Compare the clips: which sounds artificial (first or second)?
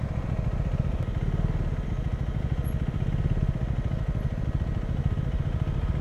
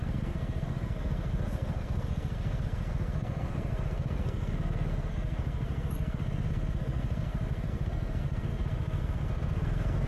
second